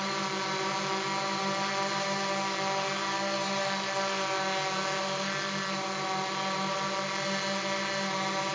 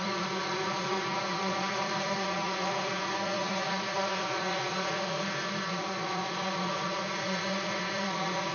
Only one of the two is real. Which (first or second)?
first